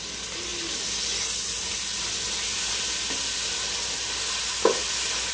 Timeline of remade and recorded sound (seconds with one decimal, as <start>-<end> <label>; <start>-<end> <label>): 0.0-5.3 recorded